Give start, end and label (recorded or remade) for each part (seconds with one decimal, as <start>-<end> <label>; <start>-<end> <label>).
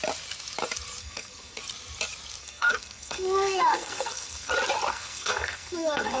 0.0-1.0 recorded; 1.0-1.6 remade; 1.6-2.4 recorded; 2.4-4.5 remade; 4.5-4.9 recorded; 4.9-6.2 remade